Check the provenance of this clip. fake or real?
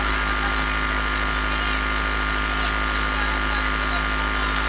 real